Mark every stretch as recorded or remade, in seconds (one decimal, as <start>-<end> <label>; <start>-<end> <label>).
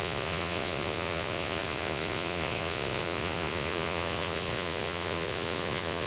0.0-6.1 remade